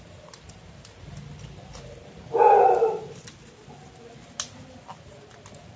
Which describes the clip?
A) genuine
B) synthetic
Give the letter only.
A